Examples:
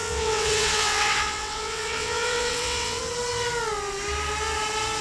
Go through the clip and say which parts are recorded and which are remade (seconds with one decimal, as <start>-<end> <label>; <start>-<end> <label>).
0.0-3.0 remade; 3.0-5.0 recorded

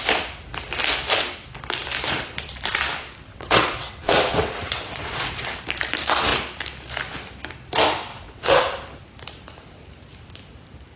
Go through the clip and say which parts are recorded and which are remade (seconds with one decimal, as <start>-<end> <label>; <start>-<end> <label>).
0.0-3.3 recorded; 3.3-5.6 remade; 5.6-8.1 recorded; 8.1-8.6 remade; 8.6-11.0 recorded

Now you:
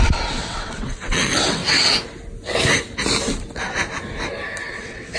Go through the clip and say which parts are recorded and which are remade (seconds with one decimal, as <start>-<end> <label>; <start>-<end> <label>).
0.0-1.6 remade; 1.6-4.7 recorded; 4.7-5.2 remade